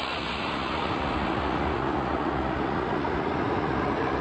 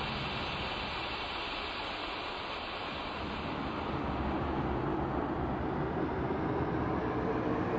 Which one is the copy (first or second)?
first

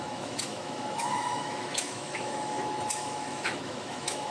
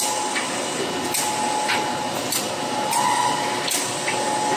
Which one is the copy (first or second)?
first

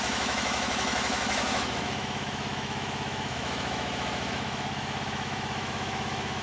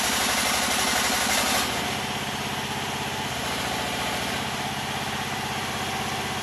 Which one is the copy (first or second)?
first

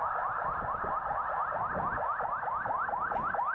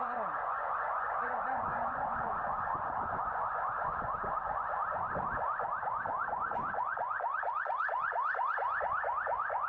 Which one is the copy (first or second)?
second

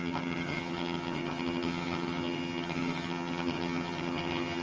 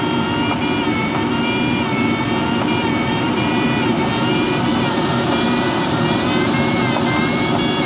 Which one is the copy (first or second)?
first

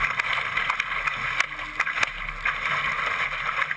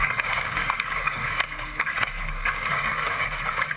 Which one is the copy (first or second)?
second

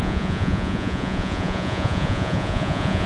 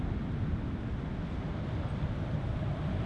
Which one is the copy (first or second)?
first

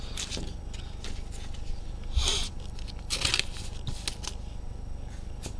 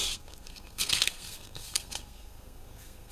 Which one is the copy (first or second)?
second